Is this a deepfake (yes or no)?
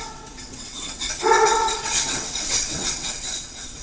yes